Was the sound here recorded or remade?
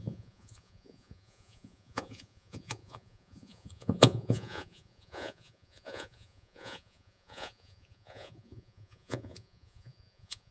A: remade